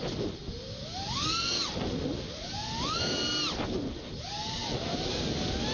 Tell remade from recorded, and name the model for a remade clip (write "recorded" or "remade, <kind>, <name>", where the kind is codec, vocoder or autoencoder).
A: recorded